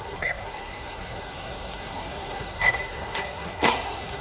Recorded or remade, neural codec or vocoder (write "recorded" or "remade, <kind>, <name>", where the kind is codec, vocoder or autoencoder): remade, codec, SNAC